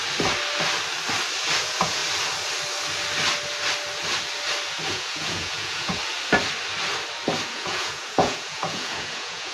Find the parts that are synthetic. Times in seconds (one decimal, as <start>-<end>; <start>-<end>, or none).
1.6-2.0; 4.9-6.0; 7.5-9.5